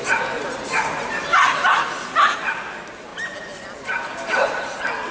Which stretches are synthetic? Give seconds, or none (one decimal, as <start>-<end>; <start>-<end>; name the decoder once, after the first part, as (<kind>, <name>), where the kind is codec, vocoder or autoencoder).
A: none

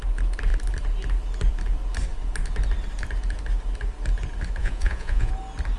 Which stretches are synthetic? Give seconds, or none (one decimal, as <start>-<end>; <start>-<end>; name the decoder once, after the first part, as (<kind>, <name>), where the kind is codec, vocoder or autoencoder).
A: 4.6-5.3 (vocoder, Vocos)

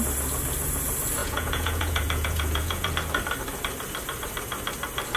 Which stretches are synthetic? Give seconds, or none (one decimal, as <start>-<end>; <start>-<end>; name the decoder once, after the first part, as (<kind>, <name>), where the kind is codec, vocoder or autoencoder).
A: 1.2-2.9 (vocoder, Vocos)

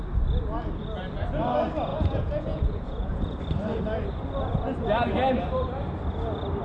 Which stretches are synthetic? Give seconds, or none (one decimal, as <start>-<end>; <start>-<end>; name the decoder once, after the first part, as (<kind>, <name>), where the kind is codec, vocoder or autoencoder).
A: 1.9-3.4 (vocoder, Vocos)